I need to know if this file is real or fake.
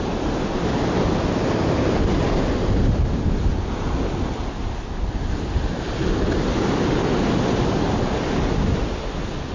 real